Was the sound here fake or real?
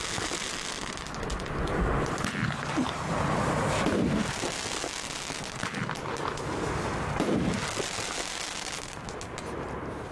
real